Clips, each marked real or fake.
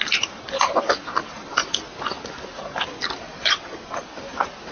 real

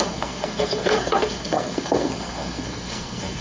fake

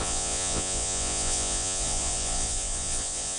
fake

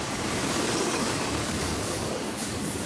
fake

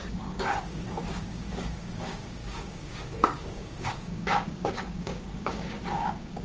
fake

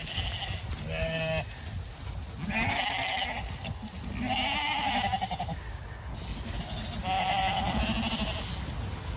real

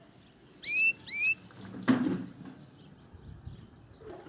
real